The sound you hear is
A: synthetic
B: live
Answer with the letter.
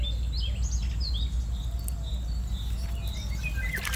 B